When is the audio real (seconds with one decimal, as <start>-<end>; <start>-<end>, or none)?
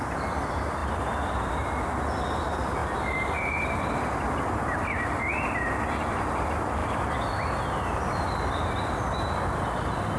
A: 0.0-0.8; 2.2-2.8; 5.7-10.2